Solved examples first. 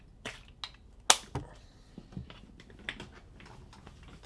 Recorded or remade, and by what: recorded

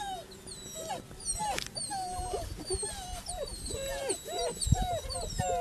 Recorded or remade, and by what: recorded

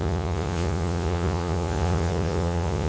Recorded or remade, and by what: remade, vocoder, Vocos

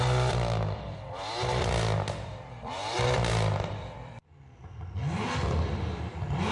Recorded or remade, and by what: remade, vocoder, BigVGAN v2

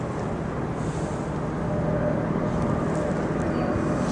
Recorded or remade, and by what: recorded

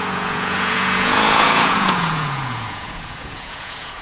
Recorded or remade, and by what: remade, vocoder, Vocos